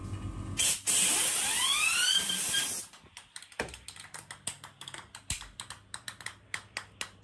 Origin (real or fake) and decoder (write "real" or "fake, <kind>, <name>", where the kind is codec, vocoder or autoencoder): real